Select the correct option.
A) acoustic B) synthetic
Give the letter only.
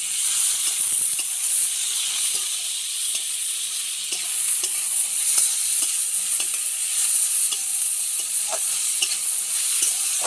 B